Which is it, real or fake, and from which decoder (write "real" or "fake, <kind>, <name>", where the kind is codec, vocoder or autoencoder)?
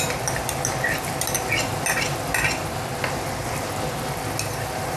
real